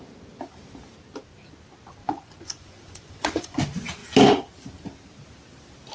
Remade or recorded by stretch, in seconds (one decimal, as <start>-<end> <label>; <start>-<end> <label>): 0.0-2.0 recorded; 2.0-3.6 remade; 3.6-5.9 recorded